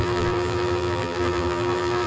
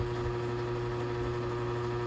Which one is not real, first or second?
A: first